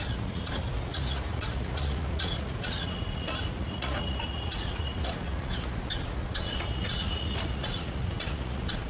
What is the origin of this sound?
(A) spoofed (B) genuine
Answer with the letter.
A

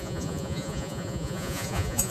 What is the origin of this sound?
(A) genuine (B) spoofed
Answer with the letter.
B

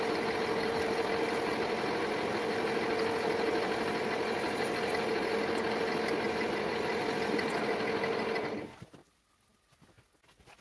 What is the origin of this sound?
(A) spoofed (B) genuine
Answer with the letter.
B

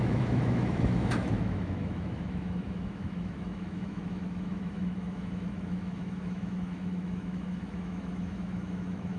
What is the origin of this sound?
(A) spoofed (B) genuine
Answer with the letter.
A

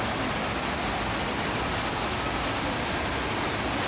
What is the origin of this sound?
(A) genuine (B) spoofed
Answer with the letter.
A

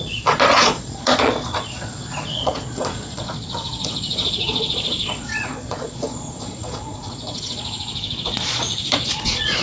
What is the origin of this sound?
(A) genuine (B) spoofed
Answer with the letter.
B